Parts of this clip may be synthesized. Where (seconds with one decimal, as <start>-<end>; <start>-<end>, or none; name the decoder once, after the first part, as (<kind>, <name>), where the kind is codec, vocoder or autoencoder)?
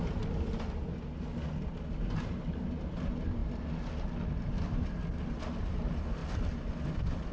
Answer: none